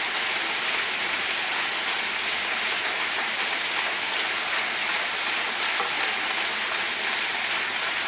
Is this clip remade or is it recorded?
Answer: recorded